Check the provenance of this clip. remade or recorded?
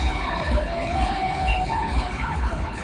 remade